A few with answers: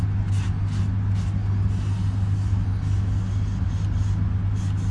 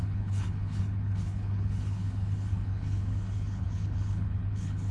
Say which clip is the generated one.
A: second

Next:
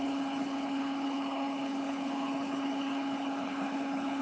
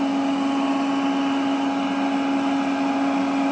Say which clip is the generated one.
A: first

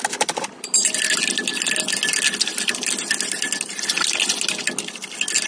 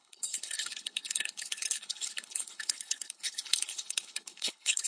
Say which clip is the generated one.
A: second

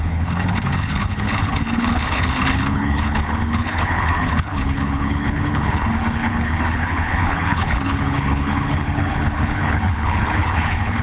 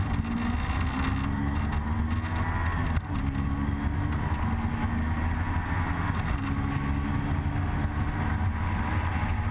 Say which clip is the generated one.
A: first